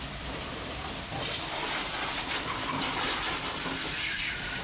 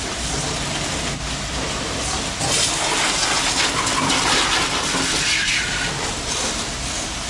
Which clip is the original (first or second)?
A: second